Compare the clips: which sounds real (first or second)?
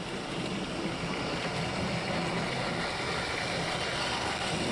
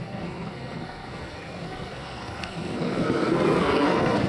first